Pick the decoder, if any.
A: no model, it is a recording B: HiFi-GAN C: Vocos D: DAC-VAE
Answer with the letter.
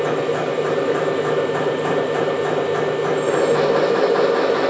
A